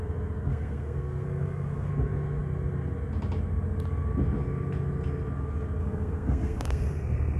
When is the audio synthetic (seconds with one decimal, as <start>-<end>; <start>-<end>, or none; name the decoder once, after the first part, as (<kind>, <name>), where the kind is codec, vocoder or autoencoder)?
0.5-1.9 (codec, SNAC); 5.8-7.4